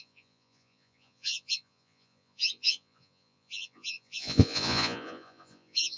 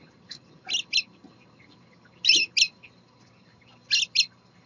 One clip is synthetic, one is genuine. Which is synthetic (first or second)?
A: first